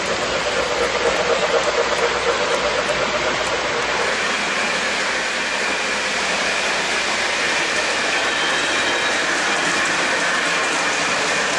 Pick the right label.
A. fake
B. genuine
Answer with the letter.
B